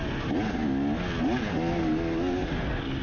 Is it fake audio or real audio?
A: real